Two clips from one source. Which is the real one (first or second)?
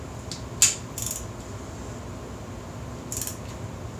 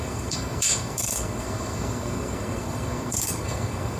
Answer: first